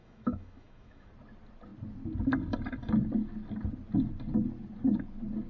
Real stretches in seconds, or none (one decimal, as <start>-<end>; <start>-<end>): 1.1-5.5